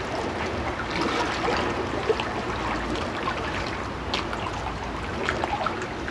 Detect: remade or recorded recorded